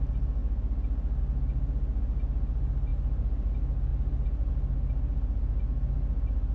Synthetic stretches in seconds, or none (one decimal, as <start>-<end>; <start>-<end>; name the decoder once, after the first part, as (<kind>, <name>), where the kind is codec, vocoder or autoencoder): 3.9-4.5 (vocoder, BigVGAN v2)